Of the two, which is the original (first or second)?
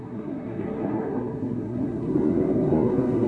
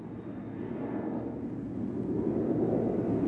second